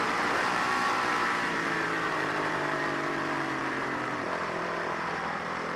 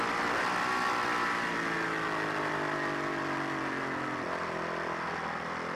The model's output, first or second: first